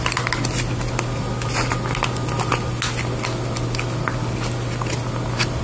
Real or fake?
real